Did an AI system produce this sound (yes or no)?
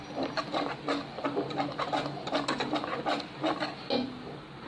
no